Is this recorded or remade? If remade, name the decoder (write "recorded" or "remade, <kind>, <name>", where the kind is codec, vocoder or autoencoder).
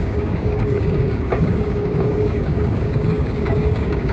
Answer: remade, codec, DAC